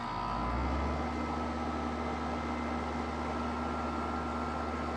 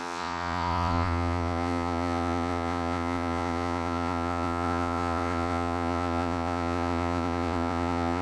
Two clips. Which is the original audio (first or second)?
first